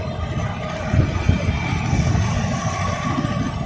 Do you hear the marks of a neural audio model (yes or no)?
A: no